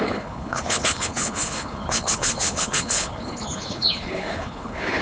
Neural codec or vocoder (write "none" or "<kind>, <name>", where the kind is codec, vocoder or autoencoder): codec, HILCodec